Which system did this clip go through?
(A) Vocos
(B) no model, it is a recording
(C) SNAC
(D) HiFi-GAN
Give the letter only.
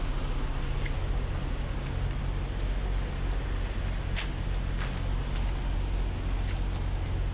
B